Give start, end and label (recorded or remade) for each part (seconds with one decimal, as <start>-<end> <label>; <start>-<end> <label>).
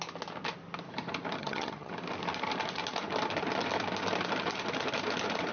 0.0-1.4 recorded; 1.4-1.9 remade; 1.9-5.5 recorded